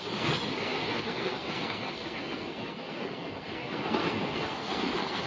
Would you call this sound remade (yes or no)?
yes